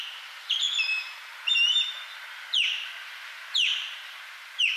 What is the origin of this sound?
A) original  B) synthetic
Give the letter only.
A